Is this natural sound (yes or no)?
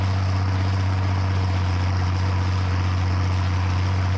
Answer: yes